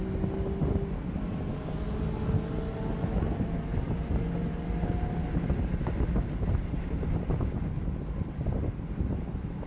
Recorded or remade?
recorded